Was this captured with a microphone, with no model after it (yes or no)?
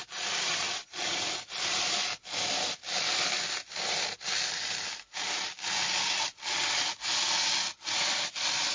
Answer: yes